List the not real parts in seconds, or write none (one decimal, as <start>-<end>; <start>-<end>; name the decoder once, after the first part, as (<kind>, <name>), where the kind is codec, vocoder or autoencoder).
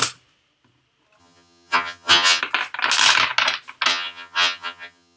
1.2-2.4 (vocoder, HiFi-GAN); 3.9-5.2